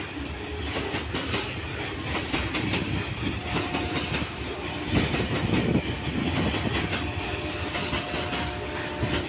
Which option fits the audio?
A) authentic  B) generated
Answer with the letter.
A